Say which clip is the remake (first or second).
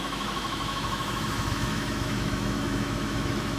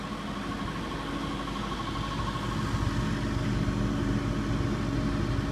first